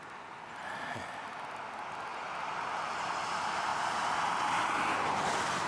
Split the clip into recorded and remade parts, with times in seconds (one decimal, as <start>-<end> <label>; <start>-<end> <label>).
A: 0.0-2.1 recorded; 2.1-3.1 remade; 3.1-5.7 recorded